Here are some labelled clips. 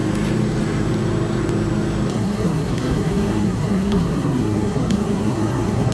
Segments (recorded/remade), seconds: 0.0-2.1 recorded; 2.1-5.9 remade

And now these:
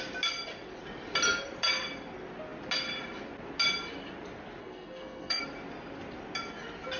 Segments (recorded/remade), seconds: 0.0-4.6 recorded; 4.6-5.4 remade; 5.4-7.0 recorded

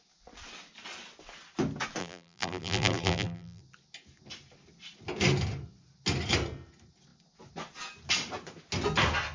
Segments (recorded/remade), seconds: 0.0-2.0 recorded; 2.0-3.6 remade; 3.6-9.3 recorded

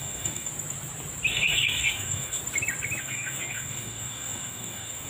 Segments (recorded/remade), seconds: 0.0-0.5 remade; 0.5-1.3 recorded; 1.3-2.4 remade; 2.4-3.0 recorded; 3.0-5.1 remade

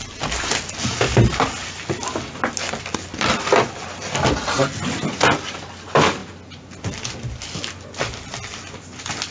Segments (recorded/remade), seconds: 0.0-9.3 recorded